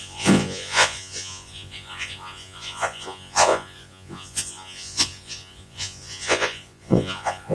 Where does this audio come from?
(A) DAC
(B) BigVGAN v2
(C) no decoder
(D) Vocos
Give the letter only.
D